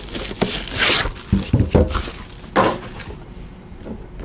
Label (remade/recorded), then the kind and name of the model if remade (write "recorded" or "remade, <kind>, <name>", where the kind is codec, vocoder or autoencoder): recorded